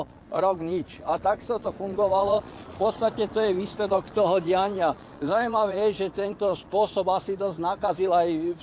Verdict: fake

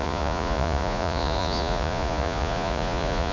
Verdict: fake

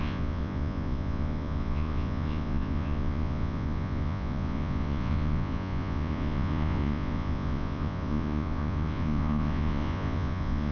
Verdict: fake